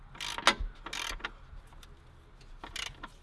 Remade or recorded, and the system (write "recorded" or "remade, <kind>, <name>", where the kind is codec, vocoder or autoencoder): recorded